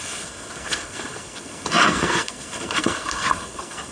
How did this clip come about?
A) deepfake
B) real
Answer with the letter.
A